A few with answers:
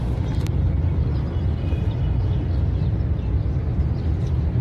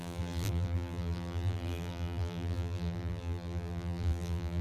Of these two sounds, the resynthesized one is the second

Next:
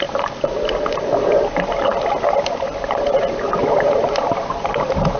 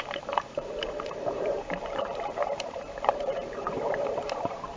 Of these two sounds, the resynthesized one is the second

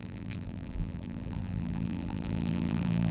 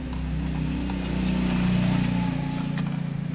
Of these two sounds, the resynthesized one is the first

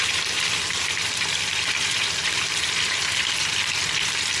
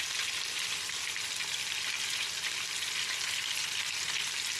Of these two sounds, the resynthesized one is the first